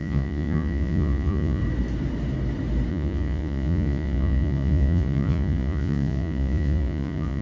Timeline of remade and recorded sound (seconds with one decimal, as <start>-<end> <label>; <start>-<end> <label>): 0.0-1.6 remade; 1.6-2.9 recorded; 2.9-7.4 remade